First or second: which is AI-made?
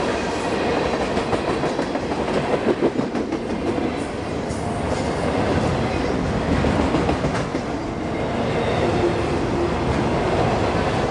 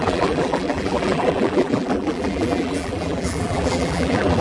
second